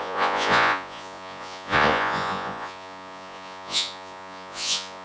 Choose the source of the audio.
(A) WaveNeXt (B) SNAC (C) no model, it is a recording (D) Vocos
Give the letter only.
D